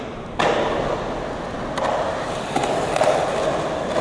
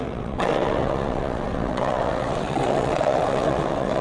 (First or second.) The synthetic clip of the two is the second